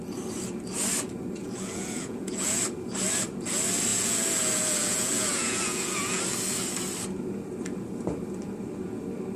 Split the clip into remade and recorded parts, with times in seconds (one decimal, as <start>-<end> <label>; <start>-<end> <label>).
0.0-1.4 recorded; 1.4-2.6 remade; 2.6-3.9 recorded; 3.9-6.2 remade; 6.2-9.4 recorded